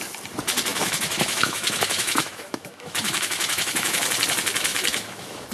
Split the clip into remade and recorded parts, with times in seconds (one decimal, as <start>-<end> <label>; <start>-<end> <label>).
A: 0.0-0.7 recorded; 0.7-4.0 remade; 4.0-4.7 recorded; 4.7-5.5 remade